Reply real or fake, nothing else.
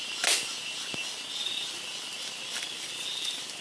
real